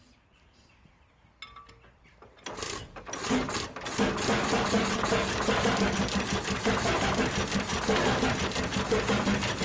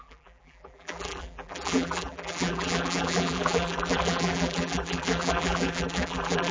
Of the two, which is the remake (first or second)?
second